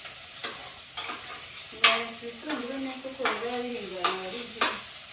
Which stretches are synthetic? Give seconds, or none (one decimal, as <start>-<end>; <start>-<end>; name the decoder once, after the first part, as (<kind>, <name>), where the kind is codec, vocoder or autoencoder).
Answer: 3.7-4.6 (codec, DAC)